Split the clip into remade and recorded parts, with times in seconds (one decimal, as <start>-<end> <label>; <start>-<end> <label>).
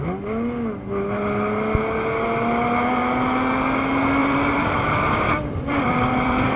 0.0-4.2 recorded; 4.2-6.6 remade